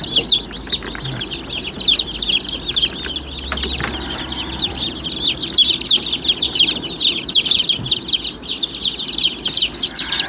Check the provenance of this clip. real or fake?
real